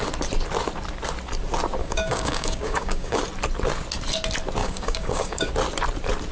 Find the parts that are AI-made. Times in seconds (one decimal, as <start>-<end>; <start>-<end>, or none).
1.8-3.2; 4.6-5.5